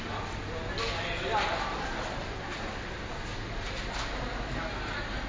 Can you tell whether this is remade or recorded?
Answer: recorded